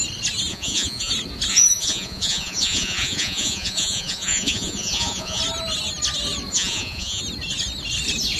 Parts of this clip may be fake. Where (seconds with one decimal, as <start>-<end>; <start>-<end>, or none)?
0.5-1.1; 1.5-5.4; 6.5-7.2

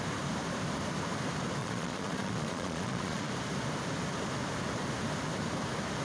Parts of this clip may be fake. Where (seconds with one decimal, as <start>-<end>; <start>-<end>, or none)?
1.6-3.3